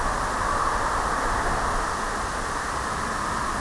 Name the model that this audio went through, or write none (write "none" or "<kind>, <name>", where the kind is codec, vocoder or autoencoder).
none